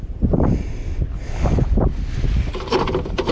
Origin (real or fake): real